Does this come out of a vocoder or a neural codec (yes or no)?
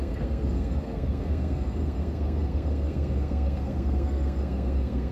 yes